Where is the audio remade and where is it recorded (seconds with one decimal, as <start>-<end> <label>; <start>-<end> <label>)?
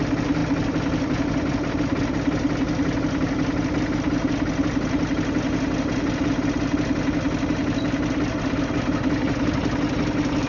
0.0-0.4 recorded; 0.4-1.7 remade; 1.7-10.5 recorded